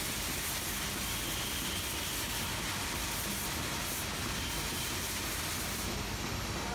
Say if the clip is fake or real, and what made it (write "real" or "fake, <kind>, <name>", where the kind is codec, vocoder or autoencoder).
real